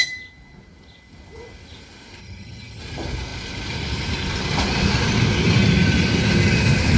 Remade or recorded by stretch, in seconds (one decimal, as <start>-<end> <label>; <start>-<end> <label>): 0.0-2.2 recorded; 2.2-2.8 remade; 2.8-7.0 recorded